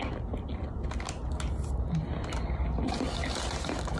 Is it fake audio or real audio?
real